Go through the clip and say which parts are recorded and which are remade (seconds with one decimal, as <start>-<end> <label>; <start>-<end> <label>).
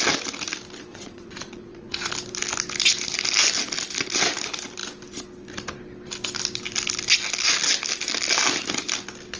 0.0-0.9 recorded; 0.9-2.1 remade; 2.1-9.4 recorded